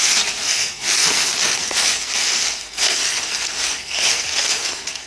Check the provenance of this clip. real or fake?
fake